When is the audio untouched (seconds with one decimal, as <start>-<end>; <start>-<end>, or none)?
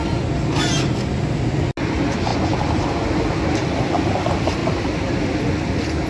0.0-6.1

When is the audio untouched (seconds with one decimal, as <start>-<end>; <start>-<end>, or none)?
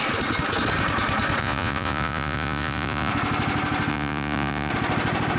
0.0-1.4; 3.1-3.9; 4.7-5.4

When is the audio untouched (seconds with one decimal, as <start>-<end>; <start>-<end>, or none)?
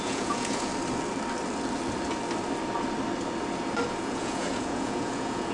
0.7-3.9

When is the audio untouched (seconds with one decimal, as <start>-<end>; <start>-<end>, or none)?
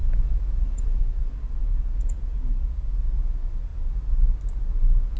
1.0-1.6; 3.0-5.2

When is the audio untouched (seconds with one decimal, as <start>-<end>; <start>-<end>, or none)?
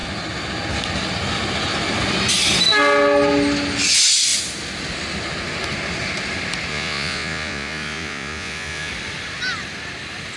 0.0-6.7; 8.9-10.4